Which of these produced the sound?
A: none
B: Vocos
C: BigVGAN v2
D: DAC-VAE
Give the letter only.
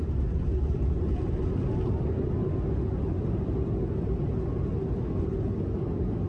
A